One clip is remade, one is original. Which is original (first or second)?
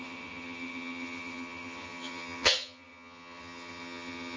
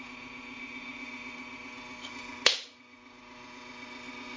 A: second